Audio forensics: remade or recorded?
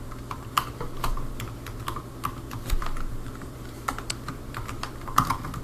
remade